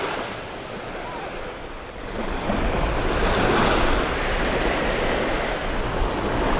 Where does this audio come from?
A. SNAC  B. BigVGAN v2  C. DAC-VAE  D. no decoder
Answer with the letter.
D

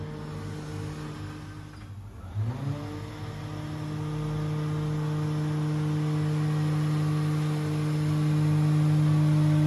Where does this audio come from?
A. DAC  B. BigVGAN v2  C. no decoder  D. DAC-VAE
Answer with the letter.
C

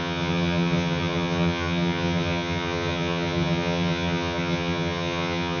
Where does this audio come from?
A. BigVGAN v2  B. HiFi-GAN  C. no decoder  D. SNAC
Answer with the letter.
B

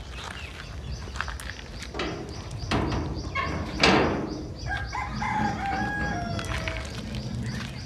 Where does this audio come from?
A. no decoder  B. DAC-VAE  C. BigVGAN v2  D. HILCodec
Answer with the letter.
A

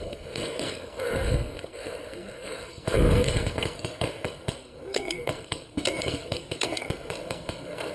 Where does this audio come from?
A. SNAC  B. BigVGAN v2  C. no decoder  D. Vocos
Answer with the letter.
A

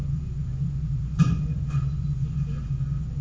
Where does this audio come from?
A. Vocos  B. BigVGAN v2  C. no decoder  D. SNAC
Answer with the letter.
A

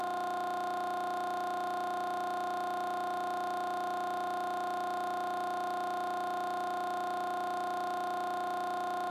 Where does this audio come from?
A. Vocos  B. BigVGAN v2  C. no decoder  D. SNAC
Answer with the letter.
C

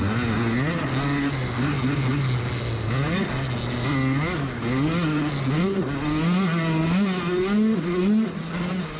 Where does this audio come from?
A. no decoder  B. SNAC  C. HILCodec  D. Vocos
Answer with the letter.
A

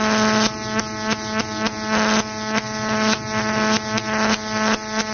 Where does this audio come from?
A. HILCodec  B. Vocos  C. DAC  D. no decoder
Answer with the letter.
D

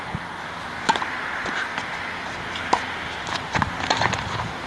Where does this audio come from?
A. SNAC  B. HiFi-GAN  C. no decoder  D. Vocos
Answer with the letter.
C